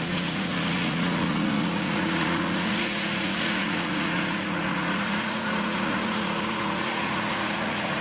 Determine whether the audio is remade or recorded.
remade